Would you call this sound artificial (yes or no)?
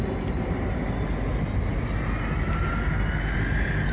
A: no